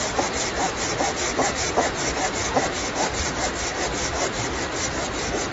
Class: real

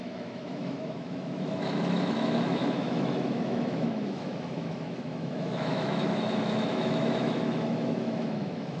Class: fake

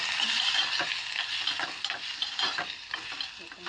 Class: real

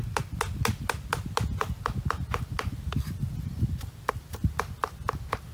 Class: real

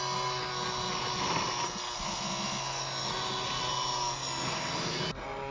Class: real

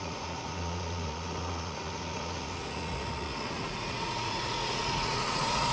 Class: fake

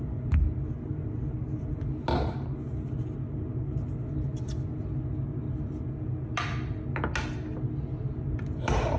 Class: real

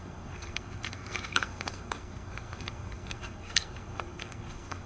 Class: fake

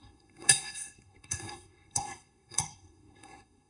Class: fake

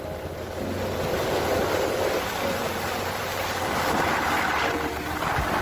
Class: fake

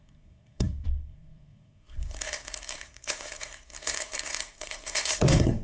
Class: fake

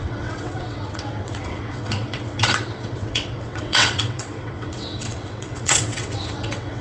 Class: fake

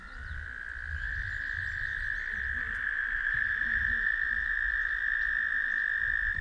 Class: real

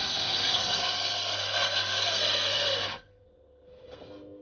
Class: fake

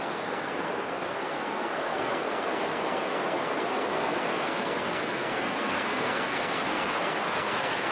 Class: fake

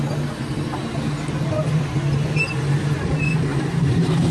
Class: real